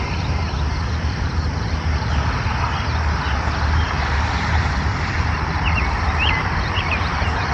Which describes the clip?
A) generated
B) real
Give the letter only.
A